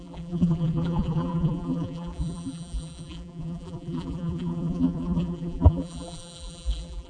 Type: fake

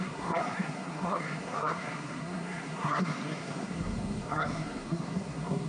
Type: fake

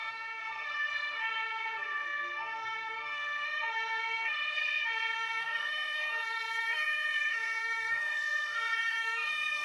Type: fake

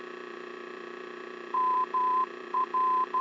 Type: fake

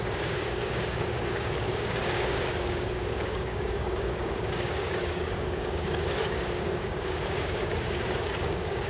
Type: fake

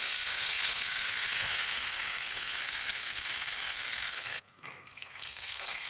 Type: fake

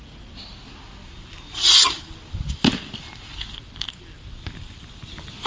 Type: real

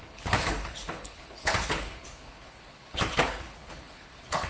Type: fake